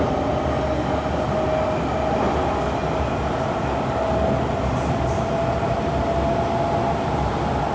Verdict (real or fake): real